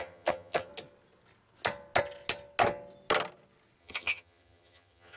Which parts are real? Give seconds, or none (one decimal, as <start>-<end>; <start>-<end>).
0.7-3.8